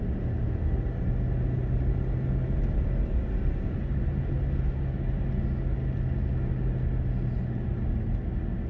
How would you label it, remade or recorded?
recorded